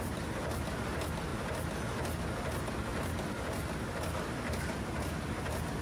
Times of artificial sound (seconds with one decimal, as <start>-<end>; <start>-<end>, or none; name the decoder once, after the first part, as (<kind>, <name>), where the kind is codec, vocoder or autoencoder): 2.9-4.8 (vocoder, BigVGAN v2)